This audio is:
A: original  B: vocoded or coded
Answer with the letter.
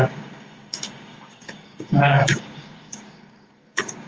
B